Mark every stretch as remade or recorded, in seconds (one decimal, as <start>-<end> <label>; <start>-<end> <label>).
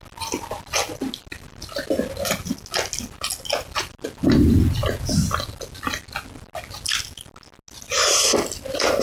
0.0-9.0 recorded